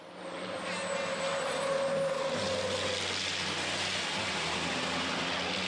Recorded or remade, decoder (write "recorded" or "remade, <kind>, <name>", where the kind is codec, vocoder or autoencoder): recorded